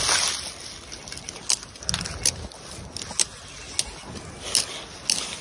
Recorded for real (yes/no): yes